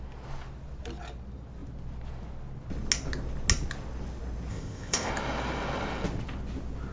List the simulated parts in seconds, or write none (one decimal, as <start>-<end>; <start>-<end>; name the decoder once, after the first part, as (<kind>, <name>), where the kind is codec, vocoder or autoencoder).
4.5-5.1 (codec, ZipCodec)